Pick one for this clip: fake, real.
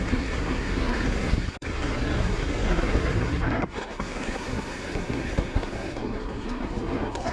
fake